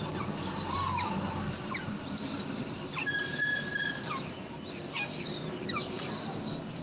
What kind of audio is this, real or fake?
real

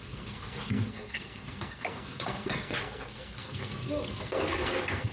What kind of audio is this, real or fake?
fake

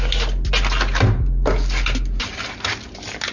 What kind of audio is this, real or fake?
real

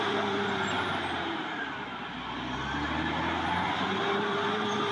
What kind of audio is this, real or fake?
fake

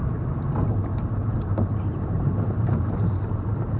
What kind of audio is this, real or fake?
fake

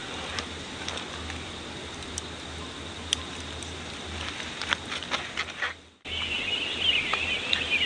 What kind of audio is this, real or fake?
real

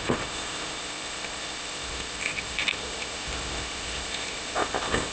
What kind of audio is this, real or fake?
fake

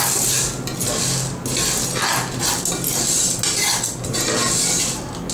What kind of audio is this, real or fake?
real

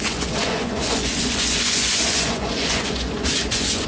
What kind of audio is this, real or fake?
fake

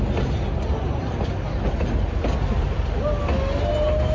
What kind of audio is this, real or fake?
real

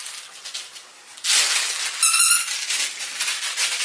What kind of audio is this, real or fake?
real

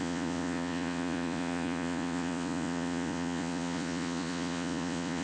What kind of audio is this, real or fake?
fake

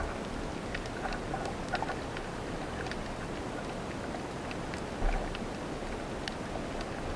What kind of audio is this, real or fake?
real